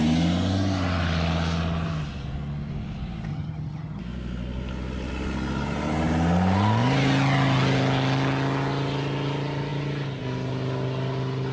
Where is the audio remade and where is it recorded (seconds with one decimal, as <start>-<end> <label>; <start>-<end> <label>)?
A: 0.0-3.3 recorded; 3.3-4.0 remade; 4.0-11.5 recorded